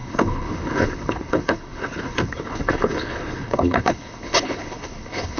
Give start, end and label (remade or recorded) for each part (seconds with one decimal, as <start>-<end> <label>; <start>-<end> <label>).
0.0-5.4 remade